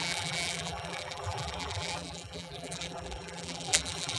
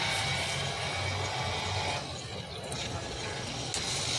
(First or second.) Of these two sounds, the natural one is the second